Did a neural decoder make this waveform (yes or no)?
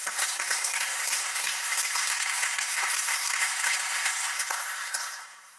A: yes